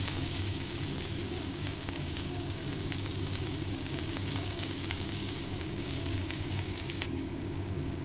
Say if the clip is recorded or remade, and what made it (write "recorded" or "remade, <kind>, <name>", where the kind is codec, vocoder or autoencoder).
remade, codec, DAC